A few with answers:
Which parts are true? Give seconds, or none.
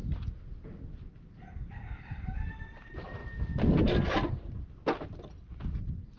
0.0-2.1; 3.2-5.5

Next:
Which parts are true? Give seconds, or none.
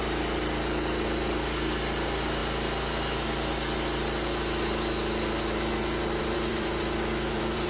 2.4-6.2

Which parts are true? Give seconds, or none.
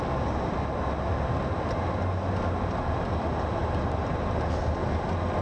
0.0-3.6; 4.6-5.4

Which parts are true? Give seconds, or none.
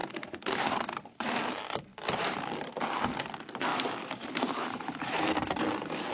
1.4-1.9; 2.8-3.7; 5.6-6.1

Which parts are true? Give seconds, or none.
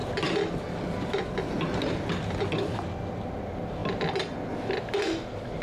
0.0-5.6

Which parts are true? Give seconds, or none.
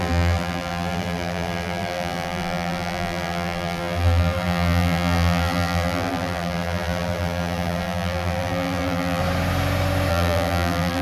9.2-10.1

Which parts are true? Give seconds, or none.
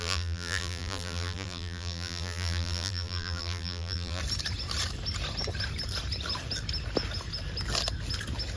4.2-8.6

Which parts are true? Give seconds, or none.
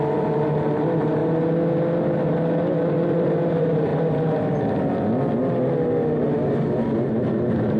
1.2-3.1; 3.9-7.2